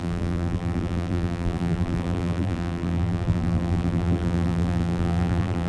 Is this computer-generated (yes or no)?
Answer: yes